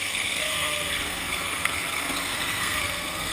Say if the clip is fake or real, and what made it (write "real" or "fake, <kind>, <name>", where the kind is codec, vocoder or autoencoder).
fake, codec, SNAC